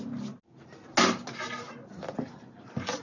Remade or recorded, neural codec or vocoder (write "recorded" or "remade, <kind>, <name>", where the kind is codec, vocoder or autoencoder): recorded